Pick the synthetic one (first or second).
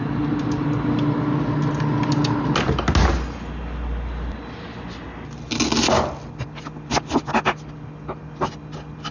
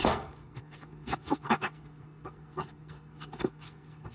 second